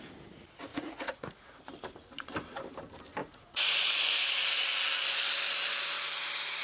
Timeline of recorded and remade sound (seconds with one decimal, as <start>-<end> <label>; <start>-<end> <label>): 0.0-0.7 recorded; 0.7-1.6 remade; 1.6-3.2 recorded; 3.2-3.9 remade; 3.9-6.6 recorded